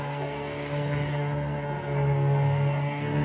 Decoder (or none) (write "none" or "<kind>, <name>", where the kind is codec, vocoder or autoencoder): codec, SNAC